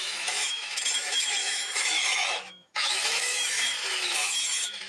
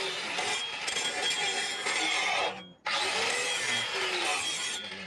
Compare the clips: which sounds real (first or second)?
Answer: second